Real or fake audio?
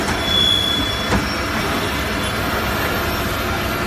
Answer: real